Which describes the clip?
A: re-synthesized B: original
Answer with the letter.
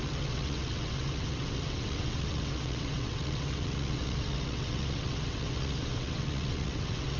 A